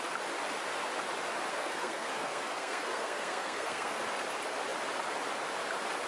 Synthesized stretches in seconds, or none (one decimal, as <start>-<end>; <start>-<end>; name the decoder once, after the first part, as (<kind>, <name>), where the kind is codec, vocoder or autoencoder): 1.5-4.0 (codec, SNAC)